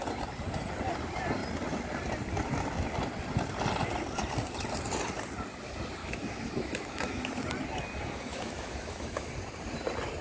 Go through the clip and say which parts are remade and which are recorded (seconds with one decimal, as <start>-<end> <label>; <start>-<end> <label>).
0.0-6.0 recorded; 6.0-7.3 remade; 7.3-8.3 recorded; 8.3-9.3 remade; 9.3-10.2 recorded